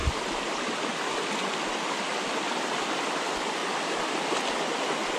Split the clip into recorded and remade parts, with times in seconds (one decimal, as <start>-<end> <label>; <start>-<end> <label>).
0.0-5.2 recorded